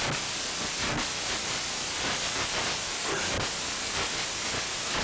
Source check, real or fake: real